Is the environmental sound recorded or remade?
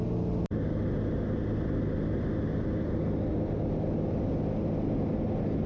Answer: recorded